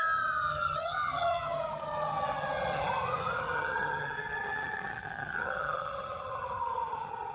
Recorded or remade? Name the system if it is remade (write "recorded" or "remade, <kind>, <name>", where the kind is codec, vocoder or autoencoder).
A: remade, vocoder, HiFi-GAN